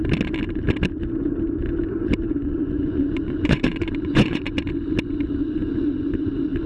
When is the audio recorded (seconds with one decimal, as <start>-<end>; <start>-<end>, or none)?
0.0-2.4; 4.6-5.6; 6.3-6.7